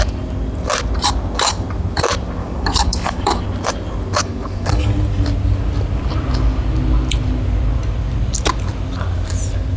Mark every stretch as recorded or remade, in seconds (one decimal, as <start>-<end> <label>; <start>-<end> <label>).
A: 0.0-2.4 recorded; 2.4-3.4 remade; 3.4-4.2 recorded; 4.2-4.9 remade; 4.9-9.8 recorded